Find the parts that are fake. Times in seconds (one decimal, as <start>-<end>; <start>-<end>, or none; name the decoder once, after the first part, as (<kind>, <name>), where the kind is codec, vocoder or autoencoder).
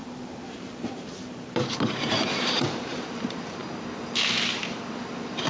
0.0-3.6 (vocoder, BigVGAN v2); 5.1-5.5